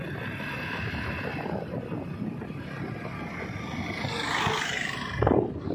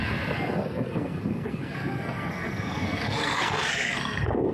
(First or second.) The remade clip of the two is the second